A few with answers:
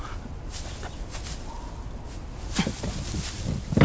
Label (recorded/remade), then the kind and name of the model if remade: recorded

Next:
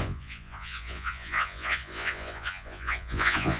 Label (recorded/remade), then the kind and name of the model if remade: remade, vocoder, Vocos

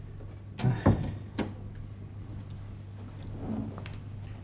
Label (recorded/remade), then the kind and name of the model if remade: recorded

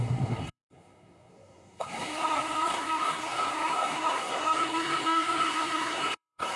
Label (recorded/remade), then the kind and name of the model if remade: remade, codec, SNAC